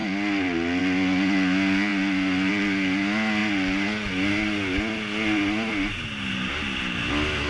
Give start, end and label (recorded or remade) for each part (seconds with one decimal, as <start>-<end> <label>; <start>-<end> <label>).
0.0-7.5 recorded